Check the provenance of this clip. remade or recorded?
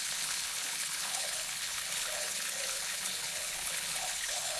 remade